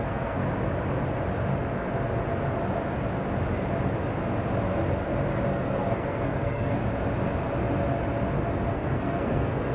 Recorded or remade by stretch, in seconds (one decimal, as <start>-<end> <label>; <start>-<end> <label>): 0.0-0.4 remade; 0.4-5.5 recorded; 5.5-6.8 remade; 6.8-8.7 recorded; 8.7-9.7 remade